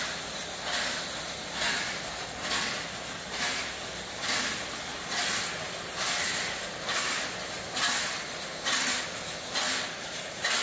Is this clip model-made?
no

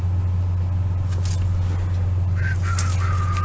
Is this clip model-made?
no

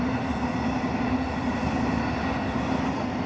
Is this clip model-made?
no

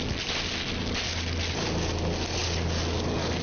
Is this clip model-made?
no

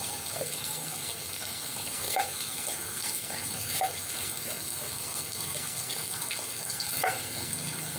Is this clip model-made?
yes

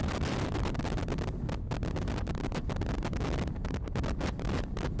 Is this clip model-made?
no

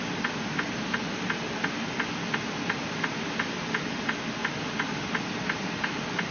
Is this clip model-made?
no